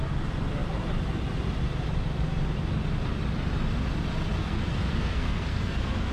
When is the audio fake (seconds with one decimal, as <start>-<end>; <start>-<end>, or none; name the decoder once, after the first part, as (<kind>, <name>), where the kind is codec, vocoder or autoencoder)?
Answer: 4.4-6.1 (codec, SNAC)